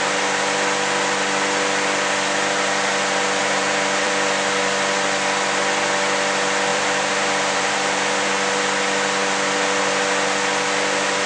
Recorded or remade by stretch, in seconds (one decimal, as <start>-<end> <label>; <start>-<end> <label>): 0.0-3.4 recorded; 3.4-4.1 remade; 4.1-6.7 recorded; 6.7-8.3 remade; 8.3-11.3 recorded